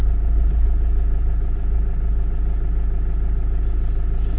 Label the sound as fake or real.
real